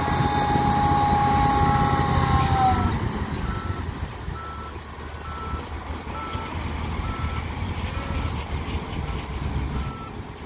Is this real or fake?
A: real